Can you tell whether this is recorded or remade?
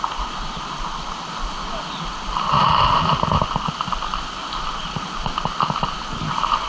recorded